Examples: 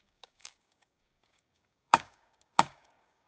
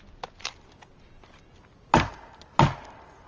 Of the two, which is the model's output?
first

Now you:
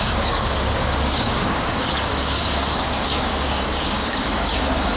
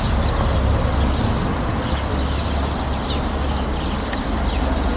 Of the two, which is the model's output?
first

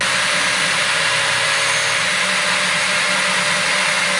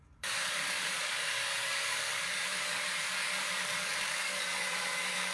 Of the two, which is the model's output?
second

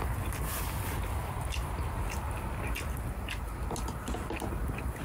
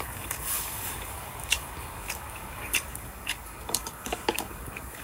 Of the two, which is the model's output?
second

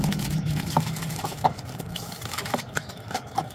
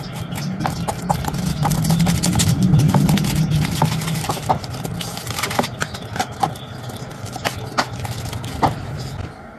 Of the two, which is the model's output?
first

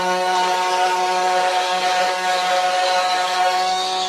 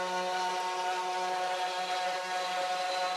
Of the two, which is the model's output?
first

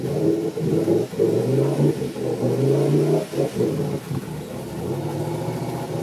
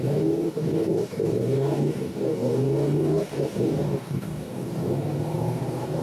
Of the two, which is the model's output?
second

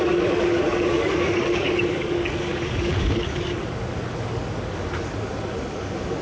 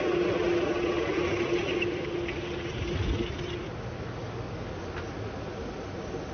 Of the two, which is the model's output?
first